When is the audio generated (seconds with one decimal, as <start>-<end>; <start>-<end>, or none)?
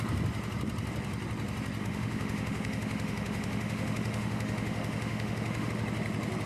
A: 1.8-5.7